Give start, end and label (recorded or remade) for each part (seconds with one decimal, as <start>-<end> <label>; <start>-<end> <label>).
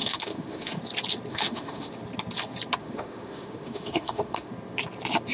0.0-0.8 remade; 0.8-1.3 recorded; 1.3-1.9 remade; 1.9-2.8 recorded; 2.8-4.5 remade; 4.5-5.3 recorded